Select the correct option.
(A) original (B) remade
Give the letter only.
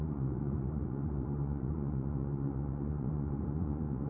B